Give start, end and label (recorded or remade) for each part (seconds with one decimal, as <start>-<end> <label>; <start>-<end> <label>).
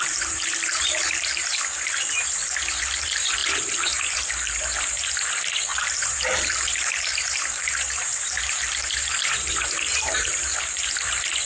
0.0-11.4 remade